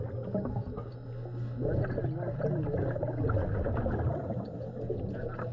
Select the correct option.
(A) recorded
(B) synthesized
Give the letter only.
A